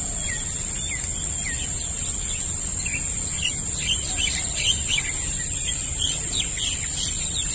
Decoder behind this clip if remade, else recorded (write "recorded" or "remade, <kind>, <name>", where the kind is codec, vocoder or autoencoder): recorded